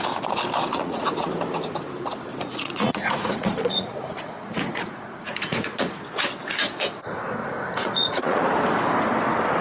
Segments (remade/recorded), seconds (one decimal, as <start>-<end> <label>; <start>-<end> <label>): 0.0-0.7 recorded; 0.7-1.3 remade; 1.3-2.3 recorded; 2.3-6.0 remade; 6.0-7.4 recorded; 7.4-8.5 remade; 8.5-9.6 recorded